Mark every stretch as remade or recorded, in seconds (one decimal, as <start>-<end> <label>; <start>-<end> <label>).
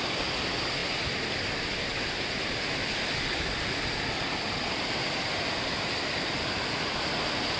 0.0-7.6 recorded